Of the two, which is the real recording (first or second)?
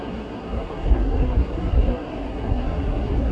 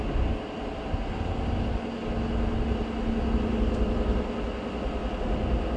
second